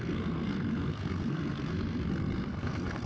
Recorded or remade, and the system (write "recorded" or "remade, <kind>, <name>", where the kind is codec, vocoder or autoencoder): remade, codec, SNAC